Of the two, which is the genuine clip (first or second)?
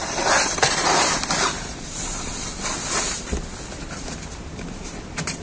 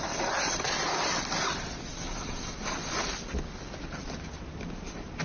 second